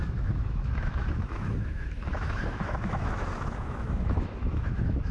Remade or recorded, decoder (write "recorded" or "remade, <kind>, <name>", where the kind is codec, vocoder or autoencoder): remade, autoencoder, DAC-VAE